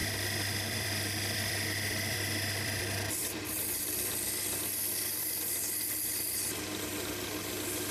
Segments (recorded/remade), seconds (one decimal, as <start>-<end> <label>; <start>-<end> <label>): 0.0-3.9 remade; 3.9-7.9 recorded